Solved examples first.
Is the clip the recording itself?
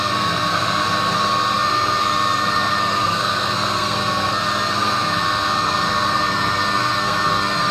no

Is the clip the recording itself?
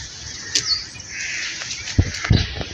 yes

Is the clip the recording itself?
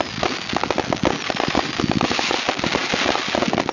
yes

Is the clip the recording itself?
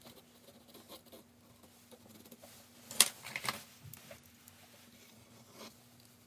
yes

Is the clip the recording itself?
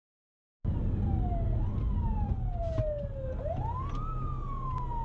yes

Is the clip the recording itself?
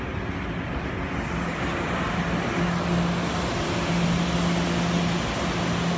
yes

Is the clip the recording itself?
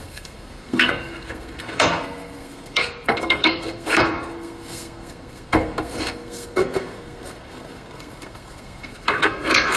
no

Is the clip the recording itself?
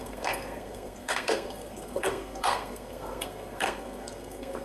no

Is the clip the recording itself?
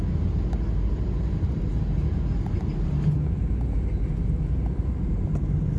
yes